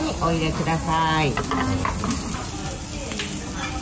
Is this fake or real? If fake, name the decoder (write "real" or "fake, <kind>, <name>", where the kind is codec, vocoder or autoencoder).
real